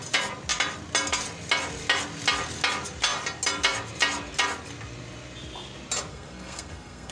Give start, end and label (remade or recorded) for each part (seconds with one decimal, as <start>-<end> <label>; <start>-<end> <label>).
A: 0.0-6.1 recorded; 6.1-7.1 remade